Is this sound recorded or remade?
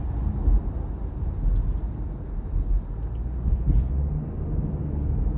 recorded